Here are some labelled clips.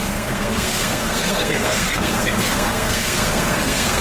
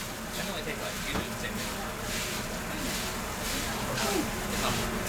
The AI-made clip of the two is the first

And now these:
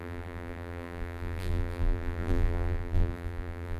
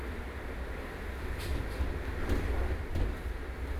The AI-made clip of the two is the first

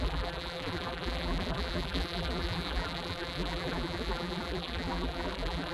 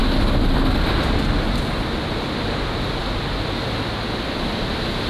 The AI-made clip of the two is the first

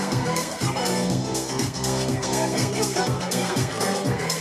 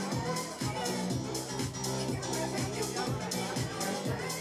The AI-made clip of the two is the first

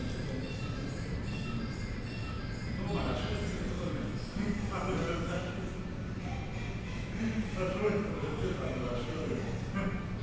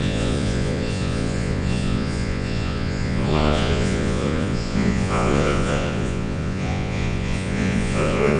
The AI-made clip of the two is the second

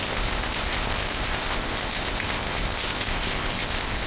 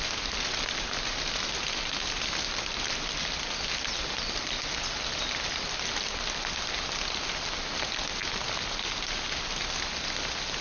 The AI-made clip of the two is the first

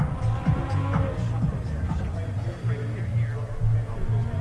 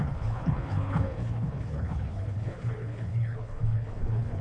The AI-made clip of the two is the second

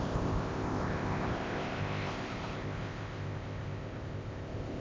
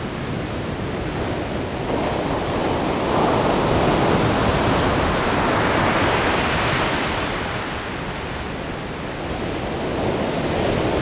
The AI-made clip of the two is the first